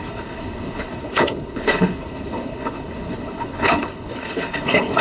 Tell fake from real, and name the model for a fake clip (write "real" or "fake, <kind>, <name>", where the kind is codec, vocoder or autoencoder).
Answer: fake, codec, HILCodec